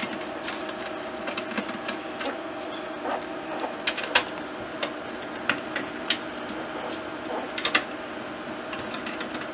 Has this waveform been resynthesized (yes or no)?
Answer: no